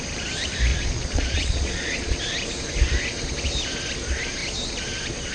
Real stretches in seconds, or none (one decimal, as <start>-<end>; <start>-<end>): 0.0-0.7; 2.2-5.3

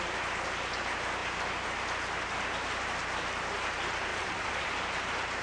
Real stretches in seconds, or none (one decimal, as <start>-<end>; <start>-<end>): 0.0-4.1; 4.7-5.4

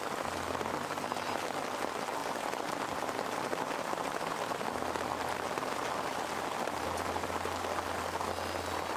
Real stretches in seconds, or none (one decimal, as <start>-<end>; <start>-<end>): 0.0-9.0

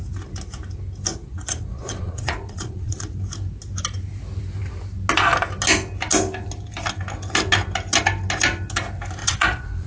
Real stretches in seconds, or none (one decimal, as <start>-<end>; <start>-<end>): 0.0-1.1; 3.2-9.2